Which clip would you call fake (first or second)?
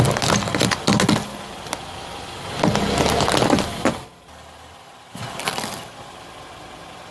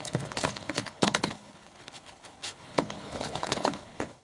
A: second